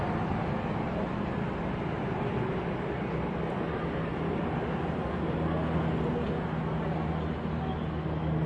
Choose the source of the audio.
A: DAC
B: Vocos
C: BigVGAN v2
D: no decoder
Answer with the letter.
D